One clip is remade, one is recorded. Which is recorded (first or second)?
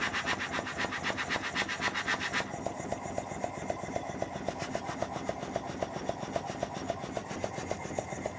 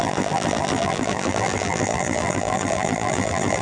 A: first